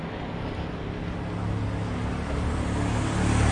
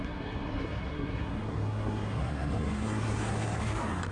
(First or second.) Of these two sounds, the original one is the first